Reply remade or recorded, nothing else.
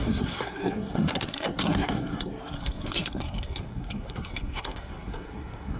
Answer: remade